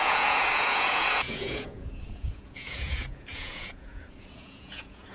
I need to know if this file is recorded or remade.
remade